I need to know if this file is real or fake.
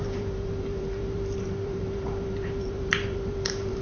fake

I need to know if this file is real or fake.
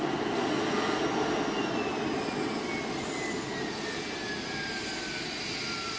real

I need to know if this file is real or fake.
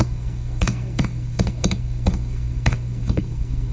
fake